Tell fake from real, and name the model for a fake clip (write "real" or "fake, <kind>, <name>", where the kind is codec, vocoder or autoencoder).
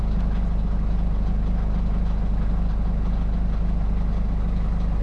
real